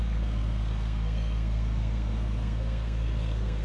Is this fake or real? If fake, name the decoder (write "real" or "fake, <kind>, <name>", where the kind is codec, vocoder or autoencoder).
fake, codec, SNAC